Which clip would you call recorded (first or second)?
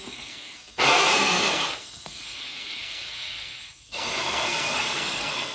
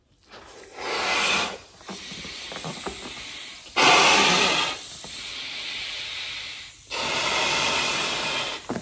second